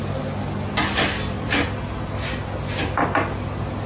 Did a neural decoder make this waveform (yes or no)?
no